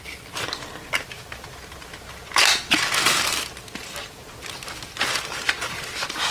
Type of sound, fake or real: real